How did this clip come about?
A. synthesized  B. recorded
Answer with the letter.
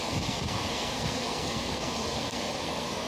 A